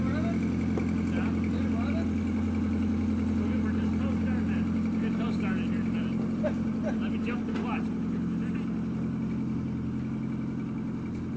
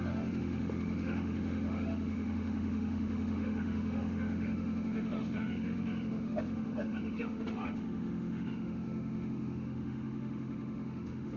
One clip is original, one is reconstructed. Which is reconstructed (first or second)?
second